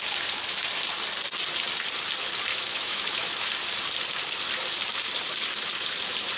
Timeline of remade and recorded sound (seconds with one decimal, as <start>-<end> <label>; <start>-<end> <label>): 0.0-2.5 recorded; 2.5-3.5 remade; 3.5-6.4 recorded